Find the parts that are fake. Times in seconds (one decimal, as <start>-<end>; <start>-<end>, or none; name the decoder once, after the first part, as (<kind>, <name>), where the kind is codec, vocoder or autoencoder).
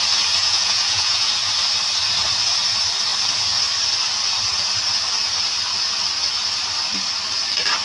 0.4-1.3 (vocoder, Vocos)